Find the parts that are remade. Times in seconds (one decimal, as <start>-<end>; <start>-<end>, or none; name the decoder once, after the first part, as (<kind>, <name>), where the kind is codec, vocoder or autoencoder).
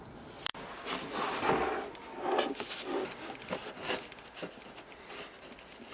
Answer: 0.5-1.5 (vocoder, BigVGAN v2)